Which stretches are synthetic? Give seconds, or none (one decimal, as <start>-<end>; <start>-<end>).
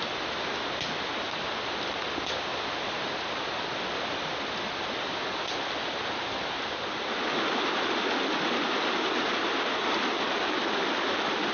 none